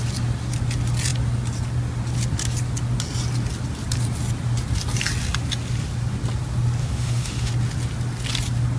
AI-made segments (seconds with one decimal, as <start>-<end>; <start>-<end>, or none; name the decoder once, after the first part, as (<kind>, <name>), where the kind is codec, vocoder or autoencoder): 6.8-7.5 (autoencoder, DAC-VAE)